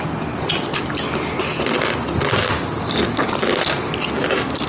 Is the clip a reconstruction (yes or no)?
no